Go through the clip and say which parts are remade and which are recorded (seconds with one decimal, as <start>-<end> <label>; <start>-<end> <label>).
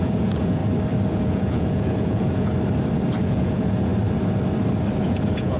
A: 0.0-0.6 remade; 0.6-1.1 recorded; 1.1-2.5 remade; 2.5-3.2 recorded; 3.2-3.9 remade; 3.9-5.0 recorded; 5.0-5.6 remade